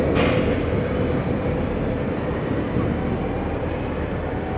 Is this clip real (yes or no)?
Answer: yes